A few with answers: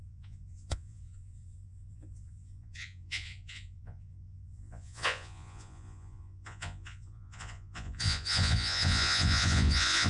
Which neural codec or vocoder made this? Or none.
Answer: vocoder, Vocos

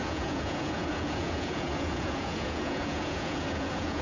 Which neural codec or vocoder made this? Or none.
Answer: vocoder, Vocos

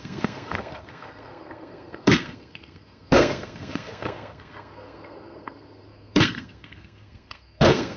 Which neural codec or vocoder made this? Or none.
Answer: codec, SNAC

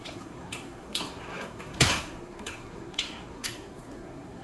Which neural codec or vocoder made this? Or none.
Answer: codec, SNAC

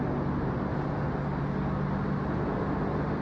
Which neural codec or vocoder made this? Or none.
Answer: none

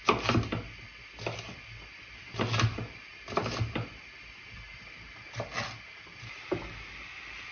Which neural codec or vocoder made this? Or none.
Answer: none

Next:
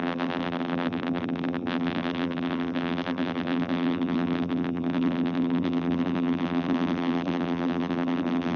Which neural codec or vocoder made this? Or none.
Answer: vocoder, BigVGAN v2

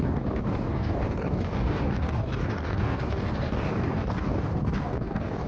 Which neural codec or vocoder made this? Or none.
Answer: codec, DAC